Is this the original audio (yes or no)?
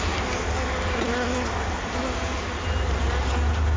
yes